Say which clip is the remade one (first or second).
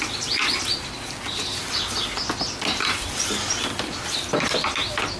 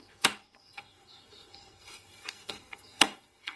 second